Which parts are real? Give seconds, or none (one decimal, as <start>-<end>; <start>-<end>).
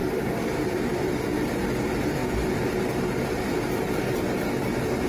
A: 1.1-5.1